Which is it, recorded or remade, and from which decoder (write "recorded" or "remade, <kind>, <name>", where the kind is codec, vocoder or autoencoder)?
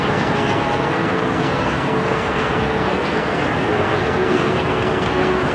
remade, codec, SNAC